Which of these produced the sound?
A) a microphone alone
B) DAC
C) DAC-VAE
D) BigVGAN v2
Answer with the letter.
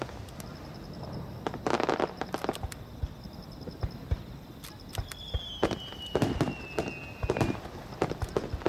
A